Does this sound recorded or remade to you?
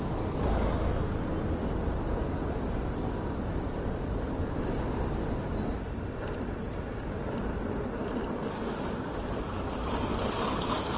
recorded